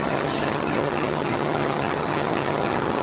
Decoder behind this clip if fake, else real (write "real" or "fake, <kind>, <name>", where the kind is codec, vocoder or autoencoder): fake, vocoder, HiFi-GAN